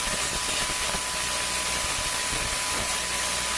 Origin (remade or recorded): recorded